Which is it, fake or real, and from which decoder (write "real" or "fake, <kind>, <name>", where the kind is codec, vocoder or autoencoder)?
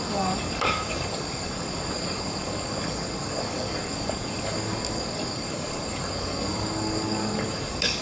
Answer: fake, codec, DAC